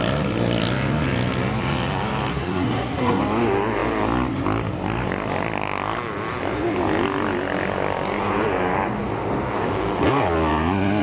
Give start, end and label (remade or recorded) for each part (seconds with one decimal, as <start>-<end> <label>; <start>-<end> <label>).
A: 0.0-2.3 recorded; 2.3-3.2 remade; 3.2-11.0 recorded